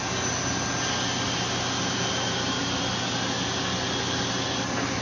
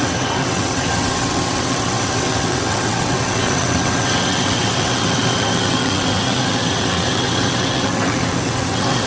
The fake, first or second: second